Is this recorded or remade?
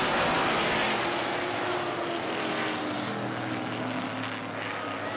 recorded